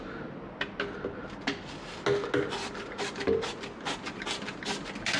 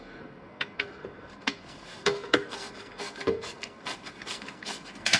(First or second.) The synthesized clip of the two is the second